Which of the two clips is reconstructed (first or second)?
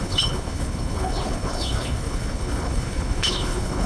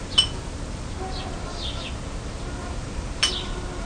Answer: first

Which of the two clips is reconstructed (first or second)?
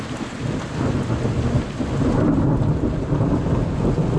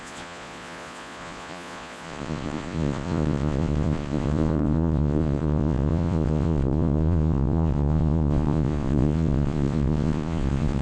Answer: second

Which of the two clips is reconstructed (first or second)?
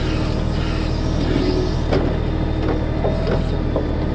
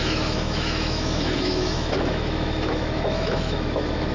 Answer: second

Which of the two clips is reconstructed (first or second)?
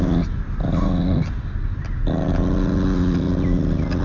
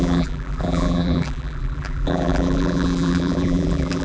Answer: second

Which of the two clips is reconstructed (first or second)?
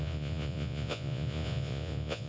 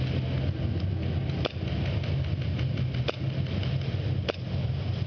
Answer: first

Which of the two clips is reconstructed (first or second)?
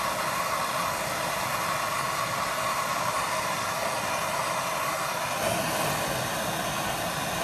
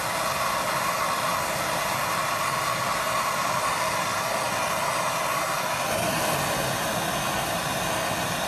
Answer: first